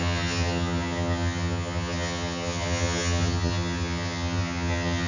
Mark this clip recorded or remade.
remade